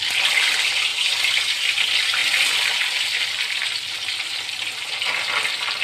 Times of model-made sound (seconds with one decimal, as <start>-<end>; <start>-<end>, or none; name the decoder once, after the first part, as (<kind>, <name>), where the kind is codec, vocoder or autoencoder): 2.2-3.2 (vocoder, BigVGAN v2)

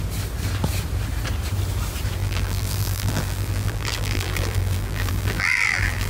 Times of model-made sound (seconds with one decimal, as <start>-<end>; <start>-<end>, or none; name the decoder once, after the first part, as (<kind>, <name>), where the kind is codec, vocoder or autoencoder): 2.2-6.1 (vocoder, BigVGAN v2)